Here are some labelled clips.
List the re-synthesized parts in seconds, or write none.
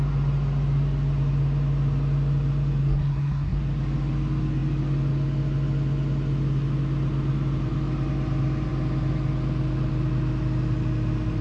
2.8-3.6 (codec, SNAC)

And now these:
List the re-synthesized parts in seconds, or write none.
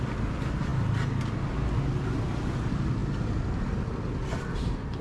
none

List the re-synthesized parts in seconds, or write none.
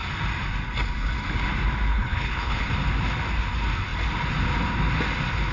1.9-2.7 (codec, HILCodec)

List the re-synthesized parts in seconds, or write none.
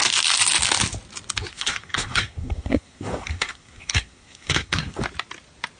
1.5-5.0 (codec, SNAC)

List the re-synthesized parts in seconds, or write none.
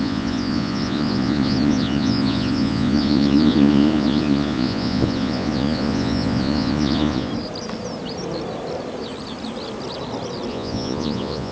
0.0-7.3 (vocoder, Vocos); 10.5-11.5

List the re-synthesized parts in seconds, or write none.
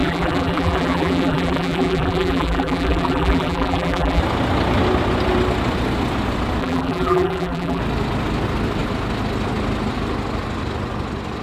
0.0-4.2 (vocoder, BigVGAN v2); 6.6-7.8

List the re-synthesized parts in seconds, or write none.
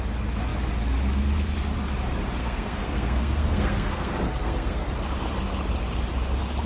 2.4-4.9 (codec, SNAC)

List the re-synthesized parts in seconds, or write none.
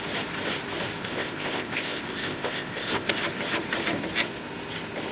1.0-3.1 (codec, ZipCodec)